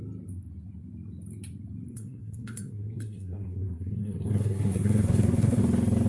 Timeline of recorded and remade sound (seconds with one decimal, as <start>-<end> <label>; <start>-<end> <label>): 0.0-1.9 recorded; 1.9-5.6 remade; 5.6-6.1 recorded